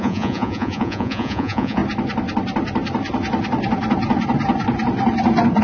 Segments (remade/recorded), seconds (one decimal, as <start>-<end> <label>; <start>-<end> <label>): 0.0-1.8 remade; 1.8-5.6 recorded

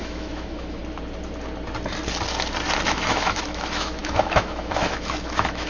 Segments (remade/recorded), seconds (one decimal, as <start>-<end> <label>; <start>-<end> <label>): 0.0-0.8 remade; 0.8-2.9 recorded; 2.9-5.7 remade

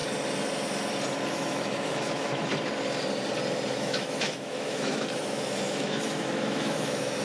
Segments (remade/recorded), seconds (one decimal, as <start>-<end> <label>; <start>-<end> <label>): 0.0-1.3 recorded; 1.3-2.5 remade; 2.5-3.7 recorded; 3.7-7.2 remade

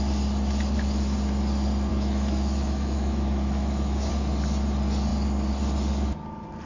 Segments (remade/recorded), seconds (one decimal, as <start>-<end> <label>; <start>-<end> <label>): 0.0-1.9 recorded; 1.9-4.1 remade; 4.1-6.7 recorded

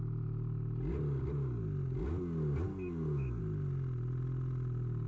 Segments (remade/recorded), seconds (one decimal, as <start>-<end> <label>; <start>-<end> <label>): 0.0-2.7 recorded; 2.7-3.4 remade; 3.4-5.1 recorded

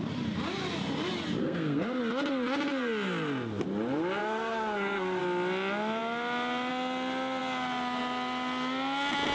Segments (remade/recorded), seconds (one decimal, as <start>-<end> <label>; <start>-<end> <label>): 0.0-1.4 recorded; 1.4-2.0 remade; 2.0-4.2 recorded; 4.2-5.2 remade; 5.2-9.3 recorded